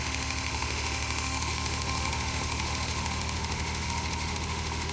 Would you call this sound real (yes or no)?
no